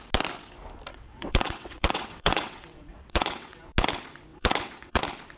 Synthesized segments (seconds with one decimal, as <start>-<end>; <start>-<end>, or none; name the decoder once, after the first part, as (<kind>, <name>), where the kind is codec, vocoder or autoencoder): 0.9-3.6 (vocoder, WaveNeXt); 4.3-5.0